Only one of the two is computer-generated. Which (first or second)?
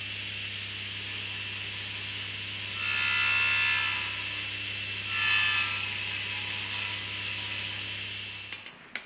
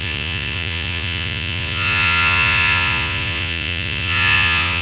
second